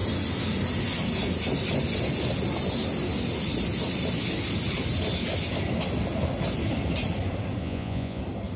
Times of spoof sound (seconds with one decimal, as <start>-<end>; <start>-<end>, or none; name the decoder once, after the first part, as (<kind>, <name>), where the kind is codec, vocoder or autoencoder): 7.6-8.2 (vocoder, Vocos)